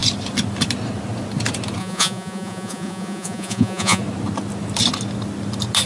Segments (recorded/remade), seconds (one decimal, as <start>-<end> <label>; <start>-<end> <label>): 0.0-1.8 recorded; 1.8-4.0 remade; 4.0-5.9 recorded